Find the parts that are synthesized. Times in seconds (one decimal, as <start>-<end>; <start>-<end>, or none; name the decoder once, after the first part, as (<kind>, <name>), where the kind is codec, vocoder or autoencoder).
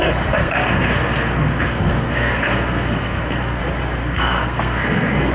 0.4-3.6 (codec, SNAC); 4.0-5.3